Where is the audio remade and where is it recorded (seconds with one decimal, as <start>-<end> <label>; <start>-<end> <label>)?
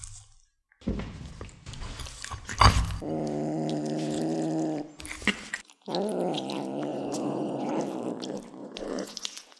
0.0-6.9 recorded; 6.9-7.7 remade; 7.7-8.6 recorded; 8.6-9.6 remade